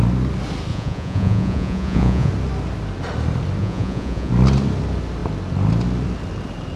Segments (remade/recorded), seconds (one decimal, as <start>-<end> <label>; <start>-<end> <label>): 0.0-0.7 recorded; 0.7-2.3 remade; 2.3-3.6 recorded; 3.6-4.3 remade; 4.3-6.8 recorded